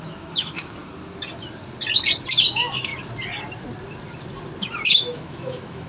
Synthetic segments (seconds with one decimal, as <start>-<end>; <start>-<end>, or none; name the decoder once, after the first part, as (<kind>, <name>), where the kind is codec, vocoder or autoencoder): 0.0-0.8 (autoencoder, DAC-VAE); 2.5-2.9; 4.7-5.9